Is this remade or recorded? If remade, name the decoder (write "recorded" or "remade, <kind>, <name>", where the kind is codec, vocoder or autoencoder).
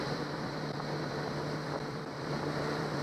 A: remade, vocoder, BigVGAN v2